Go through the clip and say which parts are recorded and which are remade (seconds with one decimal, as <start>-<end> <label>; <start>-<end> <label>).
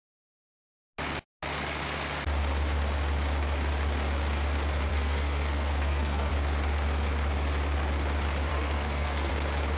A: 0.0-4.9 recorded; 4.9-6.3 remade; 6.3-8.5 recorded; 8.5-9.3 remade; 9.3-9.8 recorded